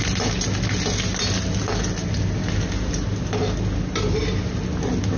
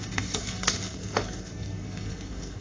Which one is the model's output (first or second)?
second